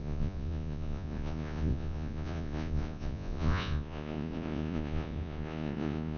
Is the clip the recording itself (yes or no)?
no